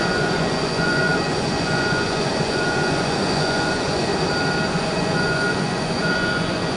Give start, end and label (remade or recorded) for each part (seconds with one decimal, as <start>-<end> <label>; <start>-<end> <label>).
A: 0.0-4.1 remade; 4.1-4.7 recorded; 4.7-6.8 remade